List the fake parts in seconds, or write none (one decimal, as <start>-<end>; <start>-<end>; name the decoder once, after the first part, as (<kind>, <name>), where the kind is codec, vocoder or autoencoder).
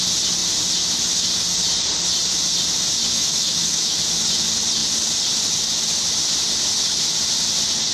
3.1-4.0 (autoencoder, DAC-VAE)